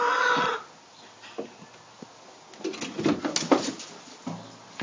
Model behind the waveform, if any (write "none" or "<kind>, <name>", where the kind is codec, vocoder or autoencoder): none